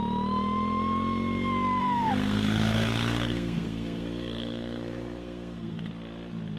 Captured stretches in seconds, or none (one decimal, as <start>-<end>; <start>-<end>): 0.0-1.8; 5.8-6.6

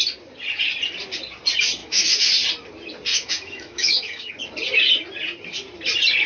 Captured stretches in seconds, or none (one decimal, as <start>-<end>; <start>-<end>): 0.0-1.8; 2.3-3.1; 4.3-6.3

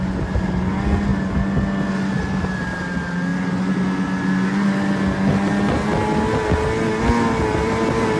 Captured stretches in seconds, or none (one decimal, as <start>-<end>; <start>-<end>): 0.0-8.2